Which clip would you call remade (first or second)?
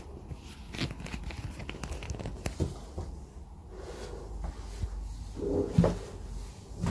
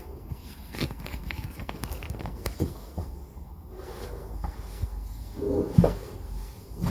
second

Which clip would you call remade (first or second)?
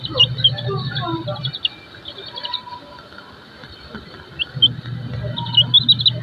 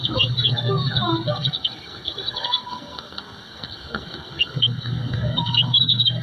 second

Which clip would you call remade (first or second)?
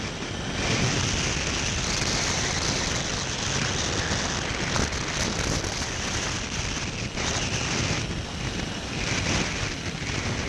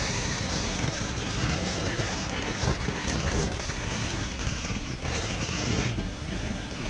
second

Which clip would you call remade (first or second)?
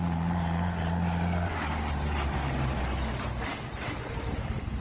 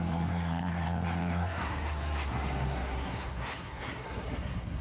second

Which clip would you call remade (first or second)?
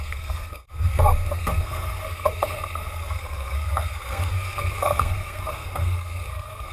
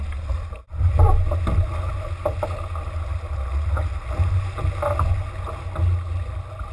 first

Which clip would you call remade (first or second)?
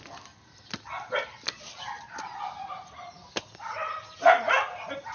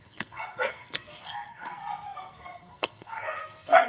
second